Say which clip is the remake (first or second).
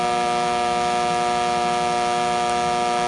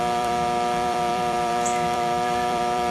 second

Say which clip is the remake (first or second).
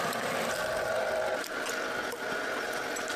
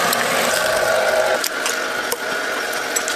first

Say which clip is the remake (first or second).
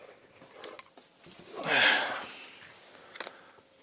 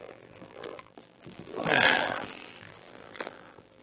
second